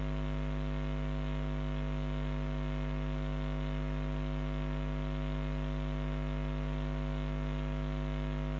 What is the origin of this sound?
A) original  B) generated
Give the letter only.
A